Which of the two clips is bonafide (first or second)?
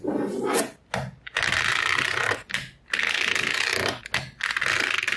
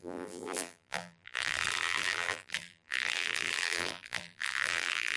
first